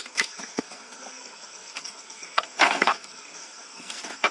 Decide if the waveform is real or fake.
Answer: fake